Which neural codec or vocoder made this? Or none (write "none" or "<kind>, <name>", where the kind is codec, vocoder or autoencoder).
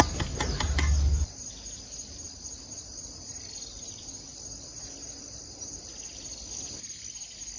none